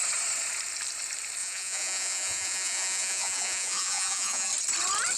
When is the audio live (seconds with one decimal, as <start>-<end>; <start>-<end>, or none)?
0.0-1.4; 4.5-5.2